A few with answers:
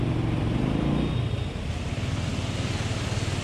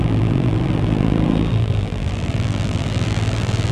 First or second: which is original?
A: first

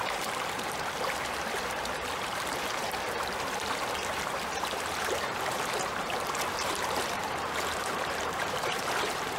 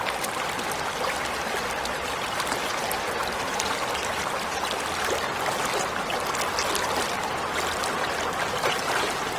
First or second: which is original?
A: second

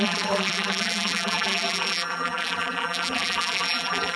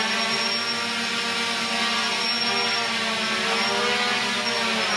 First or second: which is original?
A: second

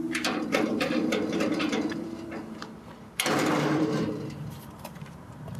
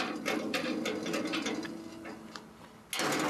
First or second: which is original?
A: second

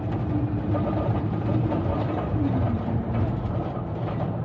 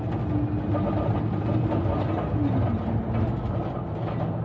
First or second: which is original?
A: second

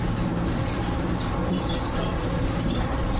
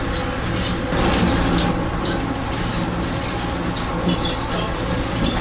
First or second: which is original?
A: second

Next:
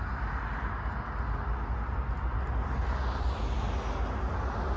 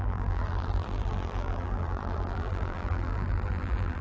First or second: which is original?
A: first